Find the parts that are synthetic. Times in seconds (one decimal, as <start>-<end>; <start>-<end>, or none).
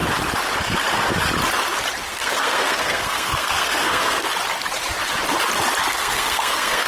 2.1-4.3; 5.9-6.9